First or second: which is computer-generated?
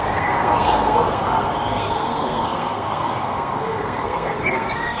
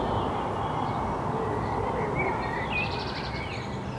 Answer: first